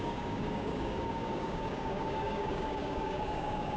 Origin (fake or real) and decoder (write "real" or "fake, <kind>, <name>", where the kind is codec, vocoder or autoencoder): fake, codec, DAC